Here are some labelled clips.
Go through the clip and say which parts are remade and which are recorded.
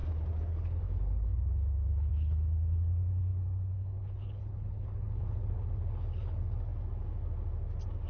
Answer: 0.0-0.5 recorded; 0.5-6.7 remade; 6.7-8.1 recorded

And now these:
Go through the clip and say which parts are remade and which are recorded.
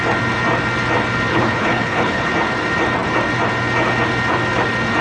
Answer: 0.0-1.3 recorded; 1.3-2.3 remade; 2.3-5.0 recorded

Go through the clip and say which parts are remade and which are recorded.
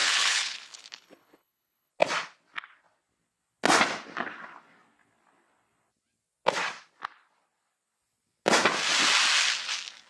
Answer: 0.0-1.9 remade; 1.9-10.1 recorded